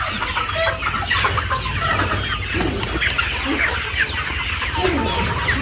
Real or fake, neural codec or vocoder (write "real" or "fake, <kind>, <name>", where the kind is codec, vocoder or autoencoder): real